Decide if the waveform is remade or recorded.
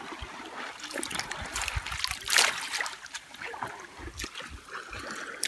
recorded